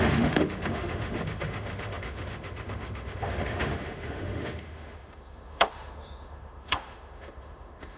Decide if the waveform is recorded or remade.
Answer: remade